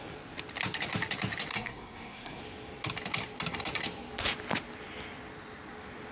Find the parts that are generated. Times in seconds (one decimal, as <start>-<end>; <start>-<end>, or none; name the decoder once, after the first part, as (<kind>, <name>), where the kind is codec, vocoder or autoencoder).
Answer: 1.5-2.4 (codec, SNAC)